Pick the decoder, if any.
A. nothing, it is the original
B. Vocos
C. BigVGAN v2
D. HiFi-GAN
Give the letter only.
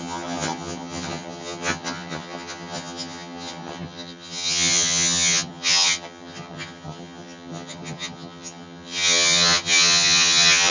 D